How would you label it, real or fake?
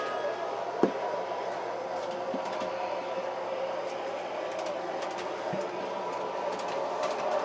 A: real